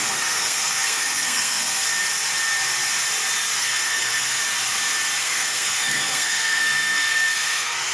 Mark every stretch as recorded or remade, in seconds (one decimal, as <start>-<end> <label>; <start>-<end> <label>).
0.0-1.8 remade; 1.8-3.6 recorded; 3.6-4.4 remade; 4.4-5.2 recorded; 5.2-7.9 remade